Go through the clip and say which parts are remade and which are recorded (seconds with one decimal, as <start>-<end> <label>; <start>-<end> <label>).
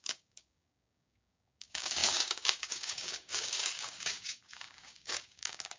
0.0-5.8 remade